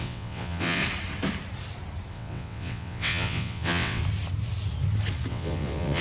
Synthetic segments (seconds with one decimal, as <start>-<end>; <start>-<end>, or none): 0.0-0.8; 2.1-4.0; 5.3-6.0